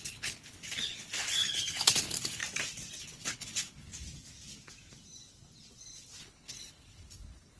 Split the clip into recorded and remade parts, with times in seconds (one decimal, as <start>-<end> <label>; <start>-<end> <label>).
0.0-2.4 remade; 2.4-3.0 recorded; 3.0-3.9 remade; 3.9-6.2 recorded; 6.2-7.6 remade